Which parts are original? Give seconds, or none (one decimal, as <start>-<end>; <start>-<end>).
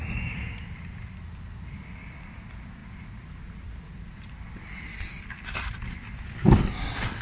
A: 0.0-7.2